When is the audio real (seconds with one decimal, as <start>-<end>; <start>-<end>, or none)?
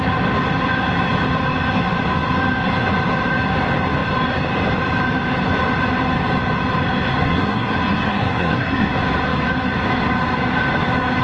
0.0-7.2; 8.9-11.2